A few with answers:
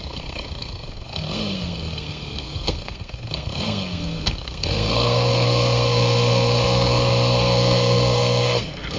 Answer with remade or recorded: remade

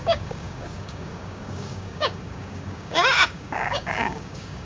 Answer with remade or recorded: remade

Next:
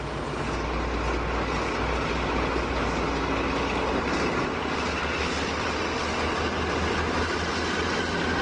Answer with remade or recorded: recorded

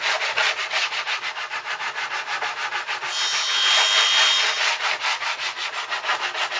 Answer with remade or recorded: recorded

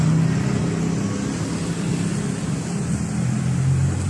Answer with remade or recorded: recorded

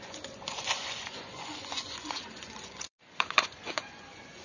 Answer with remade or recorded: remade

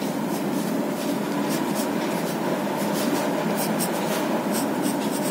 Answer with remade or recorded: recorded